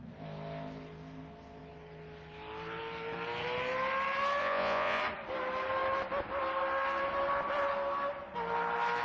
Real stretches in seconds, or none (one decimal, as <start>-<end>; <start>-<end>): 0.0-4.4; 5.0-9.0